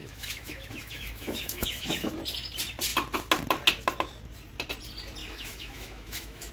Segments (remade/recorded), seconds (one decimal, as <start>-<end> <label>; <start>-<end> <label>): 0.0-2.1 remade; 2.1-5.2 recorded; 5.2-6.5 remade